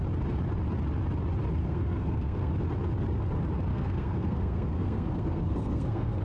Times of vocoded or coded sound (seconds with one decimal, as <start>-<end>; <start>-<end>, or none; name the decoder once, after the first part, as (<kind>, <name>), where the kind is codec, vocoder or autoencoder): 1.6-2.5 (codec, SNAC); 3.7-6.2